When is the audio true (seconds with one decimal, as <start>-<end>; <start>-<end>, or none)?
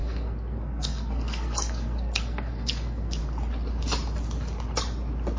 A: 3.2-5.4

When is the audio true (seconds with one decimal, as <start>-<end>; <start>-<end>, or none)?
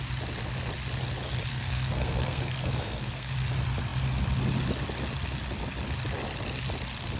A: 0.0-1.5; 3.3-7.2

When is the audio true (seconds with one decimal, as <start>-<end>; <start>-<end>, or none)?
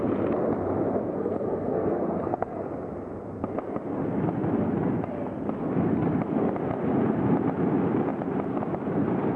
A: 0.0-1.0; 2.6-9.4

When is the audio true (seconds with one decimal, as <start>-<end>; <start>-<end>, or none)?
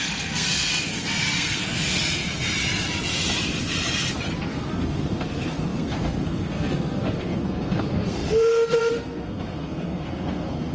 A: 2.0-4.5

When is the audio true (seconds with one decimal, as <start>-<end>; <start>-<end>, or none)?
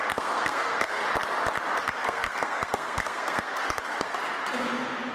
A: 1.0-1.8; 4.2-5.1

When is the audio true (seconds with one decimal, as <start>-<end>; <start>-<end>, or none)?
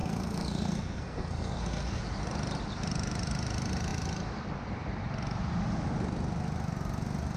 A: 2.0-7.4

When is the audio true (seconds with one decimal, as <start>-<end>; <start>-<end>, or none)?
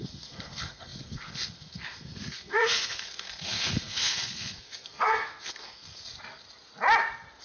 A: 6.1-7.4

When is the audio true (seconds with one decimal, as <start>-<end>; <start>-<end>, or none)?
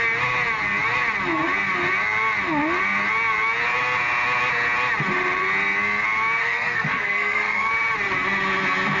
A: 0.0-6.4; 7.7-9.0